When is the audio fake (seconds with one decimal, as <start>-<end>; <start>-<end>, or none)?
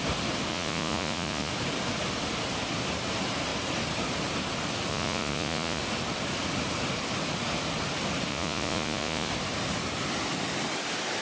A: 0.5-1.5; 4.9-5.8; 8.3-9.3